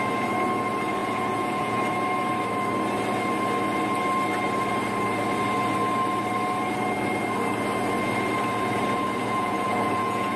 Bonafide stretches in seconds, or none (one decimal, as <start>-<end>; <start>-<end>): 0.0-1.0; 1.8-9.2